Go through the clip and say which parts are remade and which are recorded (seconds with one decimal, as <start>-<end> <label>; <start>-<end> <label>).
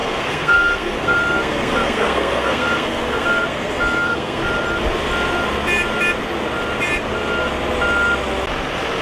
0.0-4.4 remade; 4.4-9.0 recorded